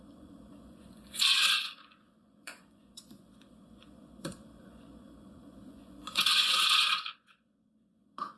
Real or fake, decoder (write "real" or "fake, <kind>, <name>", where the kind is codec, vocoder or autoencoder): fake, vocoder, Vocos